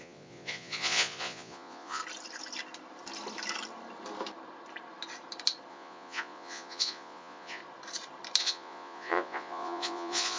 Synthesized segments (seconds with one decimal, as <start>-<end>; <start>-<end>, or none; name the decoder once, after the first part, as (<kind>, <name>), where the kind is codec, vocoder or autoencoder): 0.0-2.0 (vocoder, Vocos); 5.7-7.6; 8.4-10.4